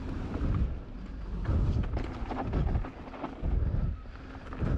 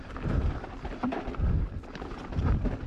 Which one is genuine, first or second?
first